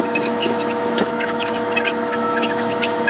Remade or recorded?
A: remade